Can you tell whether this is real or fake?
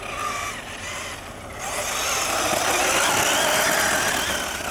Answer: real